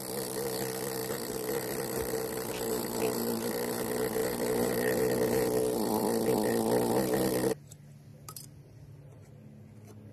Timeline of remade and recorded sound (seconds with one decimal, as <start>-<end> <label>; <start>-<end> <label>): 0.0-1.0 recorded; 1.0-2.5 remade; 2.5-4.2 recorded; 4.2-5.0 remade; 5.0-10.1 recorded